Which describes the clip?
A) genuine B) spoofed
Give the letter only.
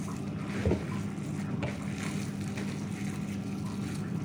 A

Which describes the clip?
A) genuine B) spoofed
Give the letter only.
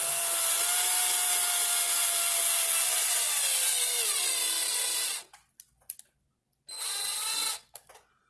A